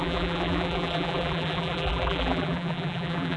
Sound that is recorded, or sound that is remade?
remade